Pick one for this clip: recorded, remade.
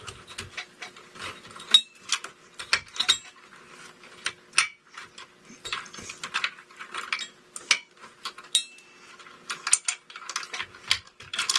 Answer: recorded